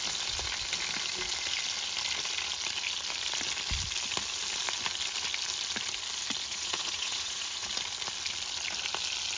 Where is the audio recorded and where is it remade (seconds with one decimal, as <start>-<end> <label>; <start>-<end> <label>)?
0.0-6.5 recorded; 6.5-7.7 remade; 7.7-9.4 recorded